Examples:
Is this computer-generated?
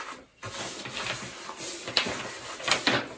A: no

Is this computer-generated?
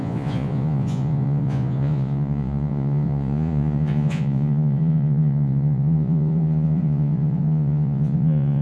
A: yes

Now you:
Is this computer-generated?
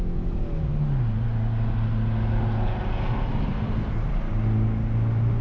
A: no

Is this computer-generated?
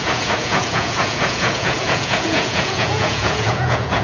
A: yes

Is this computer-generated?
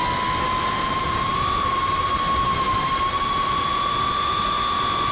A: no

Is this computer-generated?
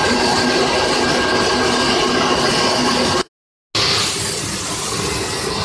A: no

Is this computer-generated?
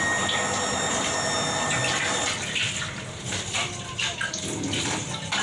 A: no